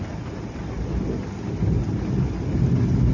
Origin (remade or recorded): recorded